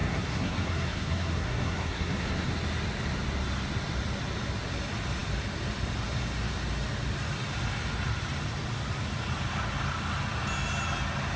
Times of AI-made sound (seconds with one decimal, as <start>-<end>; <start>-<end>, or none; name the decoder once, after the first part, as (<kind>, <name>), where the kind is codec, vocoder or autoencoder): 0.0-2.5 (codec, SNAC)

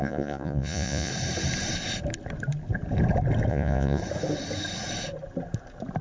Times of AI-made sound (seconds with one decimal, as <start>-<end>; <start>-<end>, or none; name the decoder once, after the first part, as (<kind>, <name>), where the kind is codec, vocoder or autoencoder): 0.0-1.1 (vocoder, Vocos); 3.5-4.0

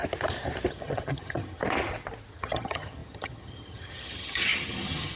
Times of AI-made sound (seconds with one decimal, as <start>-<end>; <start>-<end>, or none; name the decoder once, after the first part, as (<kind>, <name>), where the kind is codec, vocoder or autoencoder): 0.7-1.6 (vocoder, HiFi-GAN); 2.3-5.2

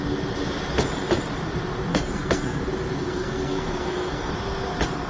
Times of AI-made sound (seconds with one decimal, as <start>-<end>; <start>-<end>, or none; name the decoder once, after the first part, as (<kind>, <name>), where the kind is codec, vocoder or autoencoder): 1.9-2.6 (codec, SNAC); 3.0-4.3

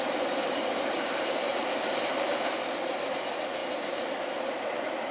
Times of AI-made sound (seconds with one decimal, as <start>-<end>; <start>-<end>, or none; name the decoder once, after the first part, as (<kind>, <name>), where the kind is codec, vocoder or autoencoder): 0.0-5.1 (vocoder, BigVGAN v2)

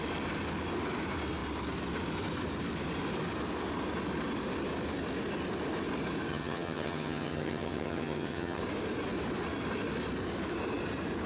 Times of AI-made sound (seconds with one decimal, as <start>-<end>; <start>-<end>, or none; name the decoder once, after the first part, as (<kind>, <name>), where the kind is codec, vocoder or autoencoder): 6.3-8.6 (vocoder, HiFi-GAN)